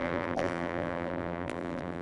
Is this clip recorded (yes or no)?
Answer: no